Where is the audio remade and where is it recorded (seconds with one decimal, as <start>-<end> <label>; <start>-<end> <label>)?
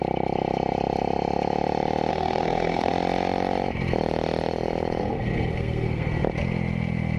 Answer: 0.0-2.1 recorded; 2.1-2.9 remade; 2.9-5.0 recorded; 5.0-6.1 remade; 6.1-7.2 recorded